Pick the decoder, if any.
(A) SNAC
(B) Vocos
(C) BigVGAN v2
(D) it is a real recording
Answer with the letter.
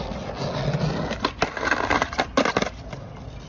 D